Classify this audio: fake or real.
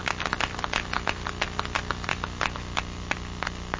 real